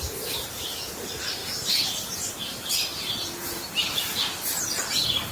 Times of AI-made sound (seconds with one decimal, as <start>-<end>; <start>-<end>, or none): 0.0-5.3